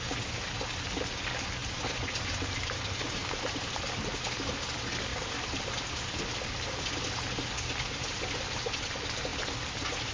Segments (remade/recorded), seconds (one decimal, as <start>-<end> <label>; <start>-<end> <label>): 0.0-1.6 recorded; 1.6-3.7 remade; 3.7-5.1 recorded; 5.1-5.6 remade; 5.6-10.1 recorded